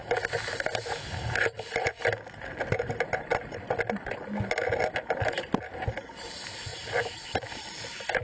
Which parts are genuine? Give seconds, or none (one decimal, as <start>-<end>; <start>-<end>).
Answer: 0.0-8.2